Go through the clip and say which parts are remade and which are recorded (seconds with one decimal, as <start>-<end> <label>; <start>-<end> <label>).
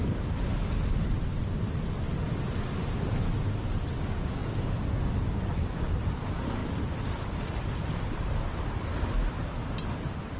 0.0-10.4 recorded